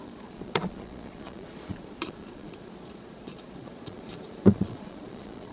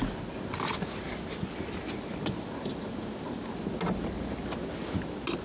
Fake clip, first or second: first